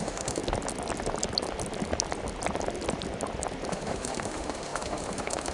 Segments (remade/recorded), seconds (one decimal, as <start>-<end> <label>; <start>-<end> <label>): 0.0-0.4 remade; 0.4-3.7 recorded; 3.7-5.5 remade